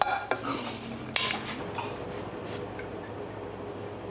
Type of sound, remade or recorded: recorded